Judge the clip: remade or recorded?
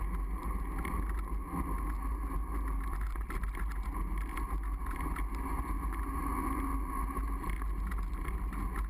recorded